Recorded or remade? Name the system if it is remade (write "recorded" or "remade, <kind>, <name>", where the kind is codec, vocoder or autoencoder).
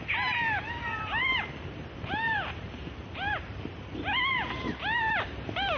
remade, vocoder, BigVGAN v2